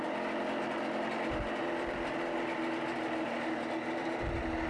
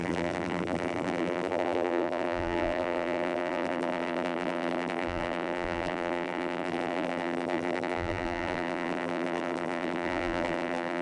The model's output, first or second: second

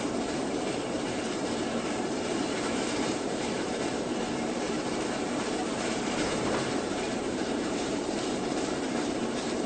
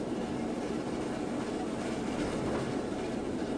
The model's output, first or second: first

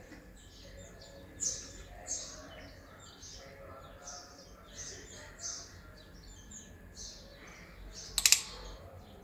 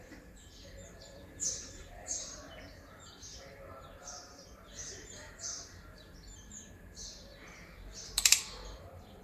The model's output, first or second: second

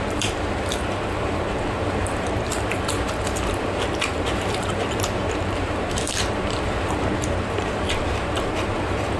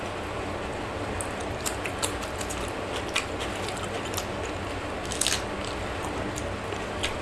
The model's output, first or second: first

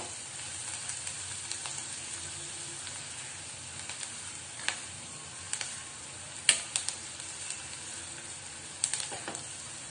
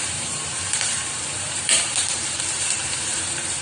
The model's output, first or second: second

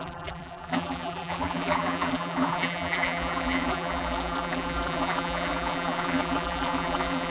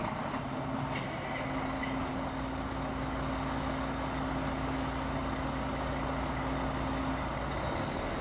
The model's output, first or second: first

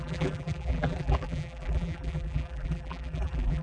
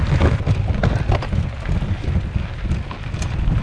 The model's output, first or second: first